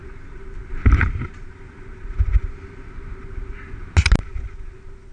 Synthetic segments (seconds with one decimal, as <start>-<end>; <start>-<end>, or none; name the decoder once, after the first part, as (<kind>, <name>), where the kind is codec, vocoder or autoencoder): none

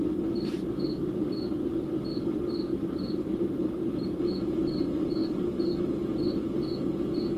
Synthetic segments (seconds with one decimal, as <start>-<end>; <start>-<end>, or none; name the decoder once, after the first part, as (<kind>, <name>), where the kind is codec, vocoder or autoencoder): 2.7-4.3 (vocoder, BigVGAN v2)

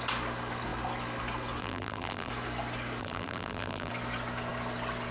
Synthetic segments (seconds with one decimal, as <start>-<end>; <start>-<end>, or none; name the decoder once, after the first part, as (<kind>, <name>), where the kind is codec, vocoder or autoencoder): 1.6-2.3 (vocoder, BigVGAN v2); 3.0-3.9

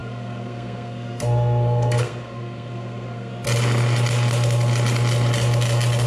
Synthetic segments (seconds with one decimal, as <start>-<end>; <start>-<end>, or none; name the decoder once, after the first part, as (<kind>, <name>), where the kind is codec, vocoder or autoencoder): 0.0-3.3 (codec, SNAC)

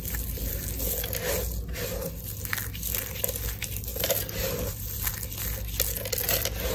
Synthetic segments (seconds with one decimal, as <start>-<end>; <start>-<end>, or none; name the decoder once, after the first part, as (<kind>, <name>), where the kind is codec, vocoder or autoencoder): none

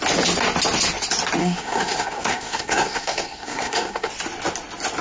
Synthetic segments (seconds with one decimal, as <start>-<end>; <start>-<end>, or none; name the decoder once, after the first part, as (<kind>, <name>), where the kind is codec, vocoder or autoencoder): 1.4-4.1 (codec, SNAC)